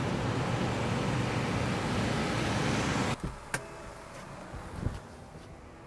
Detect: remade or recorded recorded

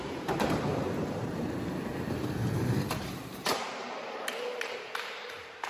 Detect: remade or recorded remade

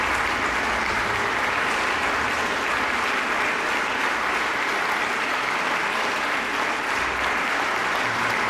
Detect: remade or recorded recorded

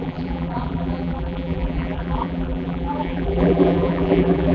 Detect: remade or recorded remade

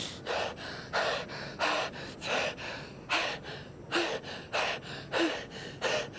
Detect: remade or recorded recorded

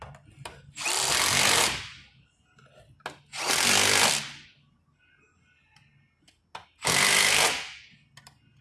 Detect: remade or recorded recorded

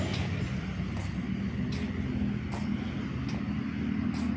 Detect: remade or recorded recorded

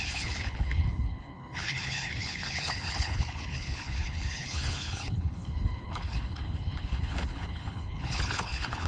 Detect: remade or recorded remade